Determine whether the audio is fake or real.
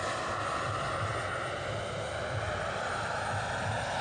real